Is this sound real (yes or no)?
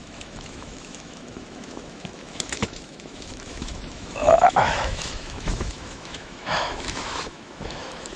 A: no